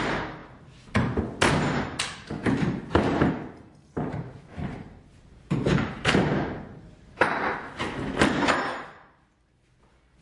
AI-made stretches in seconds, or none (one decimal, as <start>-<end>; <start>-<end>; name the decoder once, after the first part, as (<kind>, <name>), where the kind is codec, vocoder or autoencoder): 2.4-7.5 (vocoder, BigVGAN v2); 8.7-9.3